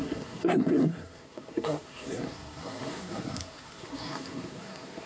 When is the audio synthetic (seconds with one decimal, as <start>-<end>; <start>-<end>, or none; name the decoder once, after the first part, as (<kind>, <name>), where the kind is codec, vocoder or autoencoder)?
0.0-5.1 (codec, SNAC)